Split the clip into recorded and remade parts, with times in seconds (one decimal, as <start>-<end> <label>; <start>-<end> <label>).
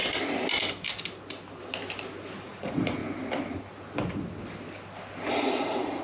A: 0.0-2.4 recorded; 2.4-3.0 remade; 3.0-5.3 recorded; 5.3-6.0 remade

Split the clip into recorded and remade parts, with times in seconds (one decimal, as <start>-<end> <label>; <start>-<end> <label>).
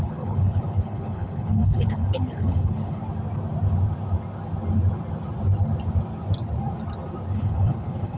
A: 0.0-3.0 remade; 3.0-7.3 recorded; 7.3-8.2 remade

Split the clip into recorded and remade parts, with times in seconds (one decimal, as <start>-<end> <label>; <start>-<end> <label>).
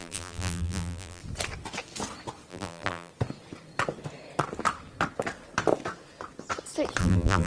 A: 0.0-1.2 remade; 1.2-2.5 recorded; 2.5-3.1 remade; 3.1-7.0 recorded; 7.0-7.5 remade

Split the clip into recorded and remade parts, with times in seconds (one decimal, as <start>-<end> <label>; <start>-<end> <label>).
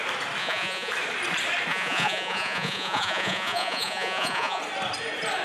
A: 0.0-0.4 recorded; 0.4-0.9 remade; 0.9-1.7 recorded; 1.7-4.6 remade; 4.6-5.4 recorded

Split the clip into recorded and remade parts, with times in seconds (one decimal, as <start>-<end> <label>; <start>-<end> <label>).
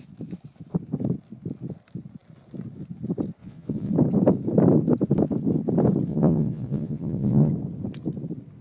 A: 0.0-3.4 recorded; 3.4-3.9 remade; 3.9-6.1 recorded; 6.1-7.5 remade; 7.5-8.6 recorded